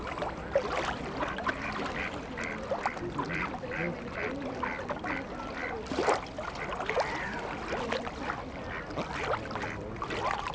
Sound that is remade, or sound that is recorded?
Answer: recorded